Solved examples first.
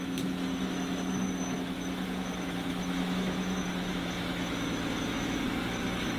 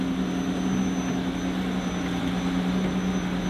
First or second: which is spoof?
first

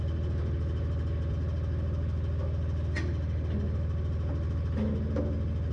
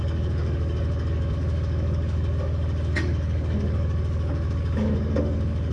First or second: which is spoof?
second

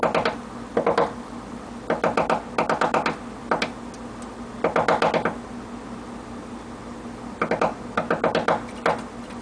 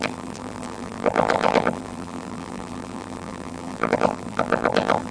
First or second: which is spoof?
second